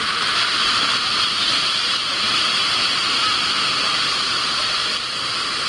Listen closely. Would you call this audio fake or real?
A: fake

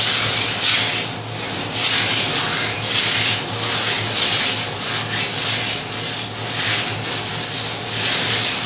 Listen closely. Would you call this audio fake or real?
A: real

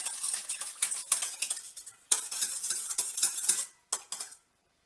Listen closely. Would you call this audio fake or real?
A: fake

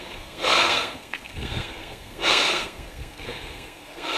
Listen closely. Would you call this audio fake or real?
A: fake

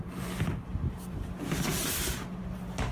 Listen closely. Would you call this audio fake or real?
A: real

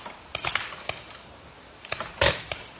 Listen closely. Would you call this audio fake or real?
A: real